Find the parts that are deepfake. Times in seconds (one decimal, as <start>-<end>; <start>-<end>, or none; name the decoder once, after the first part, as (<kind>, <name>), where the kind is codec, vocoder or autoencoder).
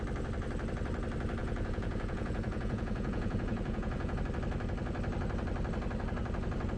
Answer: 1.4-4.2 (vocoder, Vocos)